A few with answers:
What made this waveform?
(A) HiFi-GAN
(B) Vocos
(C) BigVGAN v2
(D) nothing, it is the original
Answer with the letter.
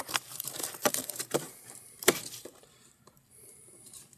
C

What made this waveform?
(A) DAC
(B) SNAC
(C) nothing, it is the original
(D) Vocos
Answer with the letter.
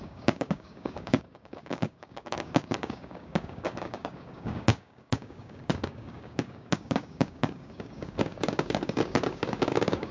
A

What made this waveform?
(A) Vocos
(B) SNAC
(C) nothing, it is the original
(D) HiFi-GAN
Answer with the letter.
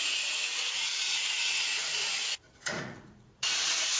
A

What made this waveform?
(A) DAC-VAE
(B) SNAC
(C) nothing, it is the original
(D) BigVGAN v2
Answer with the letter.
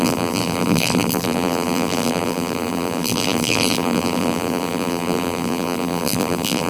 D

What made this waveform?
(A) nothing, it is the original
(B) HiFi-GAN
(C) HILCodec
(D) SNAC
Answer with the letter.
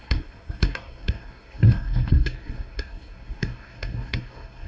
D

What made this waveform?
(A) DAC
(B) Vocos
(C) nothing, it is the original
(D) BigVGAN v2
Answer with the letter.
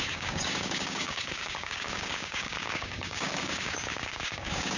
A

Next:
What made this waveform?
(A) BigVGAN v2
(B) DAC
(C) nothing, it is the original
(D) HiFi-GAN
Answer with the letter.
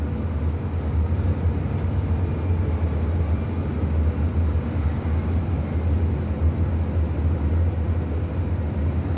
C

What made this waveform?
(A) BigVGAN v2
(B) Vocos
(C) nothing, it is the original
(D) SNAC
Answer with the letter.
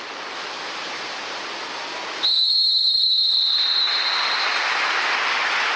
C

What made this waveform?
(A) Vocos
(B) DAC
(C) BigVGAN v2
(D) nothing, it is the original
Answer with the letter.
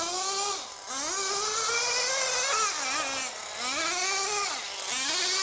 D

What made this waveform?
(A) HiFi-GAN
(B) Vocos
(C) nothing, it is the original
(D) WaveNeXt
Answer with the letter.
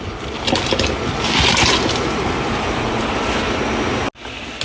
C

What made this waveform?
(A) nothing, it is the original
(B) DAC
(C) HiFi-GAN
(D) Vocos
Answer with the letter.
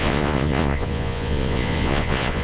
D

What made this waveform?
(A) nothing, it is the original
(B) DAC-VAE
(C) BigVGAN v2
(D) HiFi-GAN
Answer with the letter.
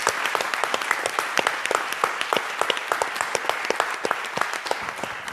A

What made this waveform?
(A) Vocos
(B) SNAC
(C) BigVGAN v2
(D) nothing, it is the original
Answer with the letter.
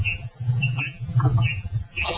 C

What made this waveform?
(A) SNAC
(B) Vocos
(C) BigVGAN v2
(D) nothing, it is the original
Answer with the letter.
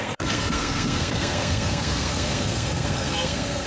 A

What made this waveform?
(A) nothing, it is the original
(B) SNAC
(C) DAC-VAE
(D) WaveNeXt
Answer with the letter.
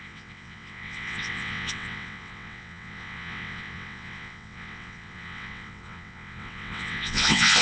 D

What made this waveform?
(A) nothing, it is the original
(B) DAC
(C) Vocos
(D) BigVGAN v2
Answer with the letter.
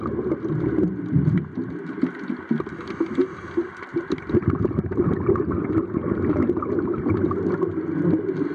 A